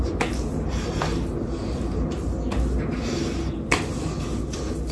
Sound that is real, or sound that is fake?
real